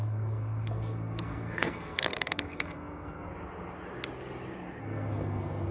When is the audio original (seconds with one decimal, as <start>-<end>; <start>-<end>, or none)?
3.3-4.8